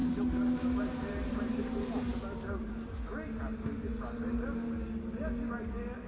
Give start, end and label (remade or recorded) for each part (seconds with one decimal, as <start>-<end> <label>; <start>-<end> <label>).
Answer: 0.0-2.9 remade; 2.9-6.1 recorded